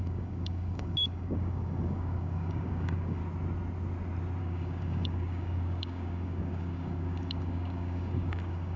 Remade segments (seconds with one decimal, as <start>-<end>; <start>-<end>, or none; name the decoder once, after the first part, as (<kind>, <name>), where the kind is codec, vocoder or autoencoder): 0.0-3.2 (codec, DAC); 4.4-8.8